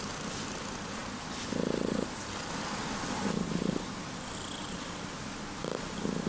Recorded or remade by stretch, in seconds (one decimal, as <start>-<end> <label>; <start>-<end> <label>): 0.0-6.3 recorded